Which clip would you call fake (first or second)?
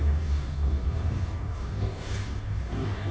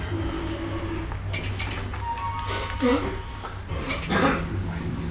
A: first